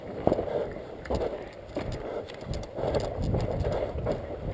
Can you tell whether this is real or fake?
real